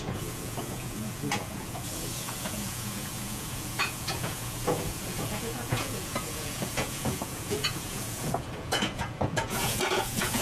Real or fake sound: fake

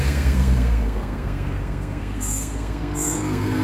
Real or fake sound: fake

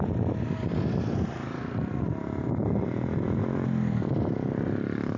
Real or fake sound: real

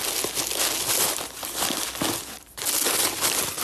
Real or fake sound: real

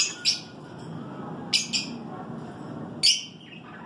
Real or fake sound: real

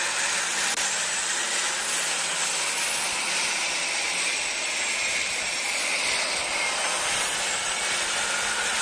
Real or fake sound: real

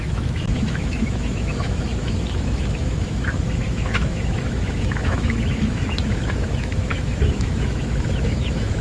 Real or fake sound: fake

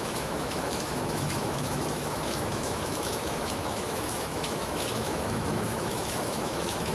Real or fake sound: fake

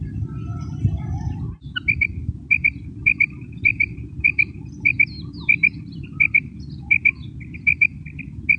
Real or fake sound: real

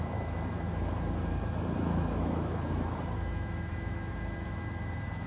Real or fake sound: fake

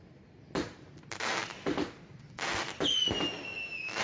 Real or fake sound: real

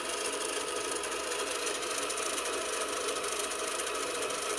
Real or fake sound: real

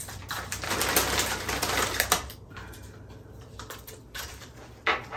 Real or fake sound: fake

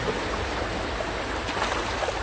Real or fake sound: real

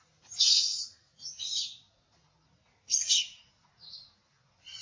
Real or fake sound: fake